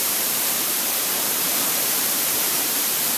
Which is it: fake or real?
fake